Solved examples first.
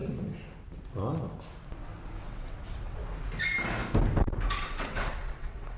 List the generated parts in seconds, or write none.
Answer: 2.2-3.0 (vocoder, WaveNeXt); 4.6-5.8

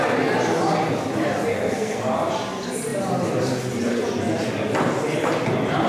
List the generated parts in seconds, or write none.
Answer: 1.5-2.0 (codec, SNAC)

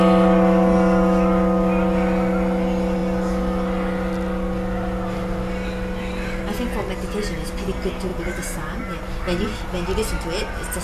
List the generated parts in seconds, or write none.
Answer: 8.1-9.0 (vocoder, BigVGAN v2)

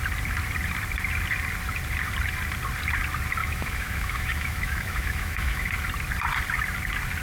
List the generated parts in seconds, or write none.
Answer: 3.4-5.7 (autoencoder, DAC-VAE)

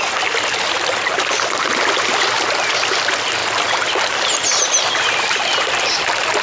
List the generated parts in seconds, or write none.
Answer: none

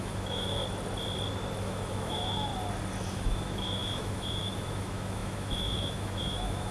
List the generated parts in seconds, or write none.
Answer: 0.0-0.6 (autoencoder, DAC-VAE); 1.6-2.5; 3.1-6.7